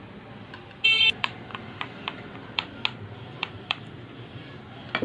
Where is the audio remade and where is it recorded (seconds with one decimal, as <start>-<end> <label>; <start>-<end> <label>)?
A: 0.0-1.0 recorded; 1.0-2.7 remade; 2.7-3.4 recorded; 3.4-4.4 remade; 4.4-5.0 recorded